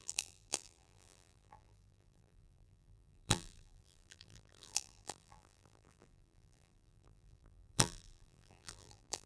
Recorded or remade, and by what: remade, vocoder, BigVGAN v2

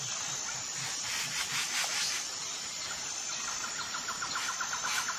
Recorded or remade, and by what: recorded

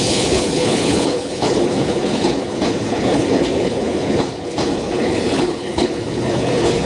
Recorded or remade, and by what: remade, codec, HILCodec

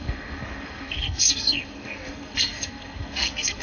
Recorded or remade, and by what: remade, codec, SNAC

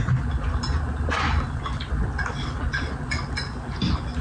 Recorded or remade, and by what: recorded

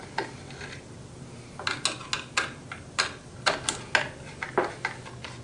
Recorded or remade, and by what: recorded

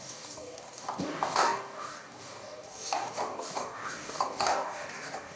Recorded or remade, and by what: remade, codec, DAC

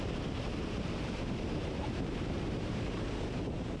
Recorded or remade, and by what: remade, vocoder, BigVGAN v2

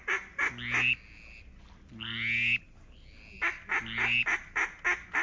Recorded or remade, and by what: recorded